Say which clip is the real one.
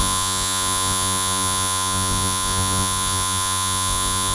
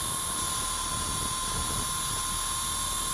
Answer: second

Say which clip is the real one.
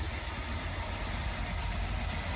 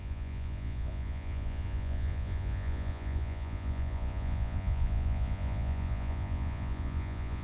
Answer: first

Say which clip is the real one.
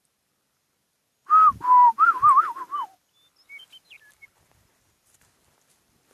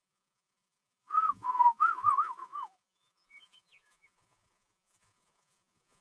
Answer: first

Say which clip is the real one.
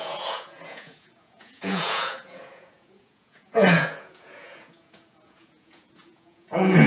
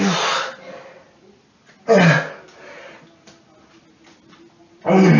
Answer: second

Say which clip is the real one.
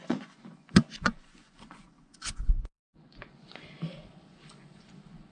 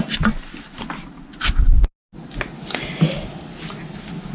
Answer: second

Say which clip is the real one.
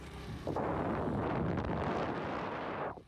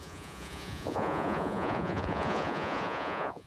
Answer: first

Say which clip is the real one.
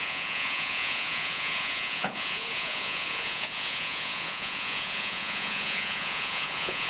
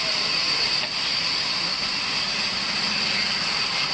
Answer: second